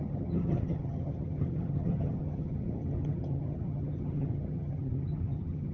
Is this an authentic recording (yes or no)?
no